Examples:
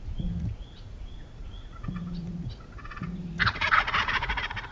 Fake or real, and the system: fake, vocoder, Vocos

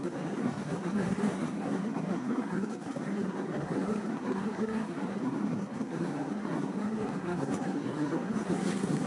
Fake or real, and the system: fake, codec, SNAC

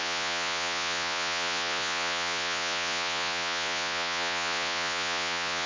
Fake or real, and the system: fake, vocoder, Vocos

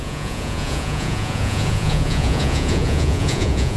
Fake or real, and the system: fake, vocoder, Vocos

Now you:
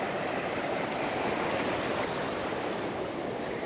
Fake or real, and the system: real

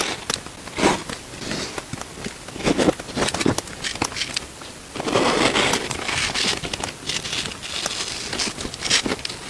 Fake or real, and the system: real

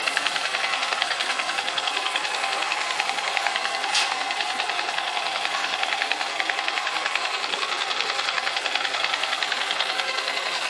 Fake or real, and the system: fake, codec, SNAC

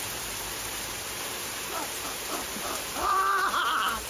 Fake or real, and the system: fake, vocoder, BigVGAN v2